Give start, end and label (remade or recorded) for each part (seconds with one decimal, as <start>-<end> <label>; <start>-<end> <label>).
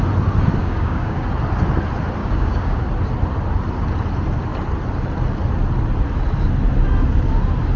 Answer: 0.0-0.6 recorded; 0.6-1.2 remade; 1.2-2.2 recorded; 2.2-2.8 remade; 2.8-7.8 recorded